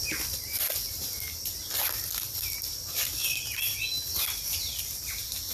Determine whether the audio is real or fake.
real